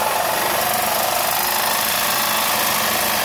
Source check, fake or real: real